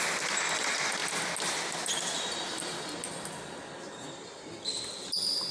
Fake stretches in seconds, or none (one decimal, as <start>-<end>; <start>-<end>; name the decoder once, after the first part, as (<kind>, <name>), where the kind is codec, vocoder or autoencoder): 2.5-4.9 (vocoder, BigVGAN v2)